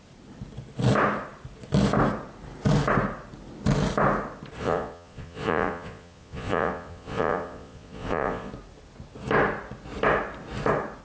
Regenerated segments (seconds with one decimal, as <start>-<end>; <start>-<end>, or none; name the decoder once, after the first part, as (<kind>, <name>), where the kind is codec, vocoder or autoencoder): 4.6-8.5 (vocoder, Vocos)